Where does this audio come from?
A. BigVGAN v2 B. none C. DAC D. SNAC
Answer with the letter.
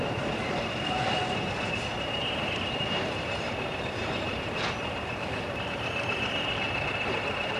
A